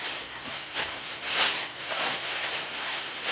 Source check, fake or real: fake